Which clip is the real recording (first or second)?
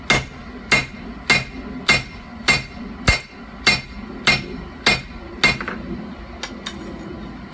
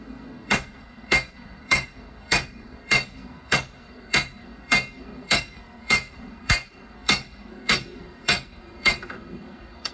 first